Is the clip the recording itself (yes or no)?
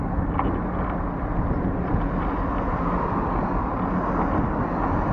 yes